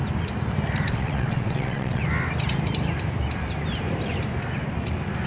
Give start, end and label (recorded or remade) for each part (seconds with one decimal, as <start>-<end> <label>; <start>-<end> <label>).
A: 0.0-0.9 recorded; 0.9-2.0 remade; 2.0-5.3 recorded